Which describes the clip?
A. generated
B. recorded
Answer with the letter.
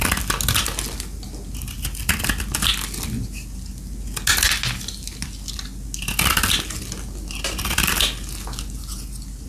B